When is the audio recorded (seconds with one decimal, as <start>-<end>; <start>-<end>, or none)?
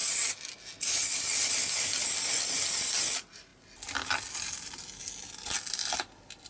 0.0-6.5